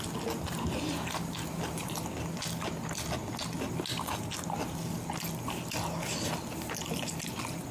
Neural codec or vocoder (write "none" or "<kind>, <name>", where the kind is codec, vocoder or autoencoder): none